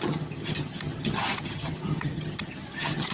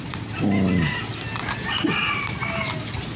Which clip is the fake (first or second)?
first